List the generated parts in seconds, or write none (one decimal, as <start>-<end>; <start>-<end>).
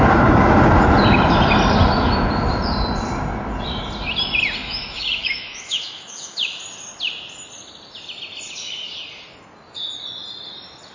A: 4.6-6.6